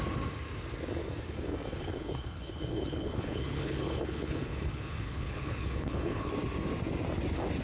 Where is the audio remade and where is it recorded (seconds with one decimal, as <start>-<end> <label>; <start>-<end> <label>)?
0.0-1.7 recorded; 1.7-6.3 remade; 6.3-7.6 recorded